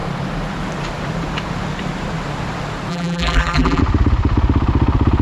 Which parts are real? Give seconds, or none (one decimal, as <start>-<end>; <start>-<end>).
0.0-2.9; 3.8-5.2